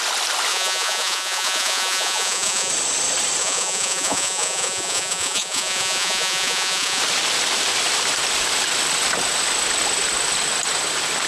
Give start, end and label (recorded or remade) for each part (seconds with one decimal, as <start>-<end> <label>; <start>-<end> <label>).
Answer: 0.0-0.5 recorded; 0.5-2.7 remade; 2.7-3.4 recorded; 3.4-7.0 remade; 7.0-11.3 recorded